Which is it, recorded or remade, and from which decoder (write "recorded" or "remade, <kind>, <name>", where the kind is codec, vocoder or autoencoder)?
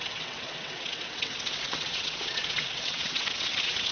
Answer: remade, vocoder, WaveNeXt